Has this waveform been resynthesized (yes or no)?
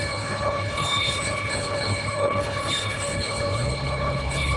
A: yes